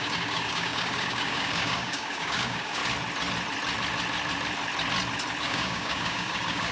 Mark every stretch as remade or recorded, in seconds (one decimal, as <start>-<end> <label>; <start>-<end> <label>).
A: 0.0-2.8 remade; 2.8-5.4 recorded; 5.4-6.7 remade